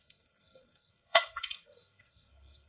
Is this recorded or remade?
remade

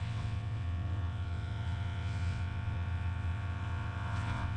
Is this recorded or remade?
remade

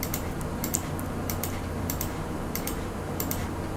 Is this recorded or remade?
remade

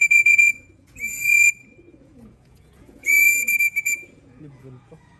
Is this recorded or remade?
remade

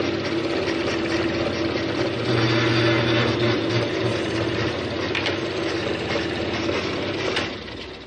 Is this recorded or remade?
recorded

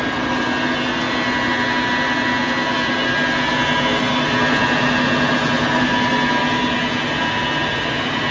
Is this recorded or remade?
recorded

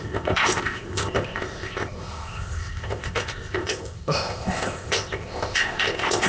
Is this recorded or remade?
remade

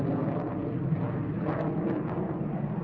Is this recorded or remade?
recorded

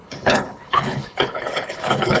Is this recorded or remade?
remade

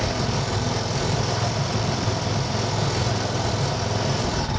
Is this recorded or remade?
remade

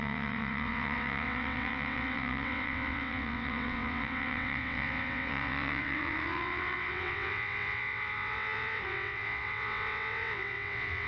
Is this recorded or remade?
remade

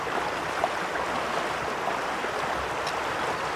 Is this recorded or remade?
recorded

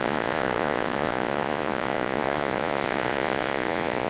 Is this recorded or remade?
remade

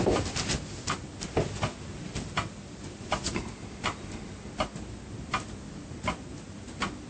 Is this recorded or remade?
recorded